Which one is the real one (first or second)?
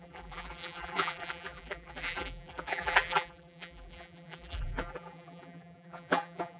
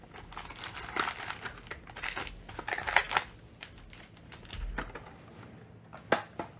second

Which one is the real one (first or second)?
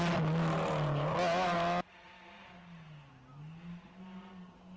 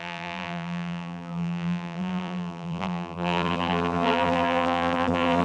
first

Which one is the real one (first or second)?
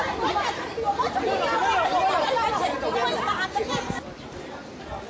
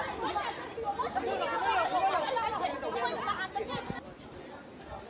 second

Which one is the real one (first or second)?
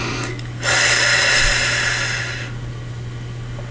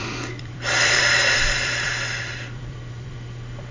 first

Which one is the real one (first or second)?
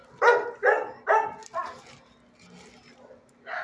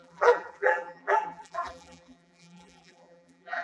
first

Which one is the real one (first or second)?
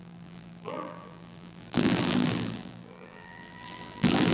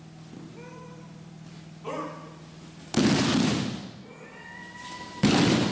second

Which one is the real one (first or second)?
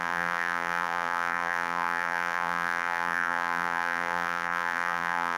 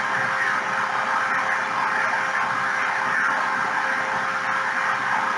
second